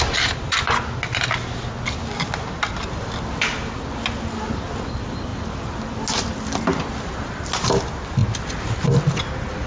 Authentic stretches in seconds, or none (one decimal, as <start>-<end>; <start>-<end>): 0.0-9.7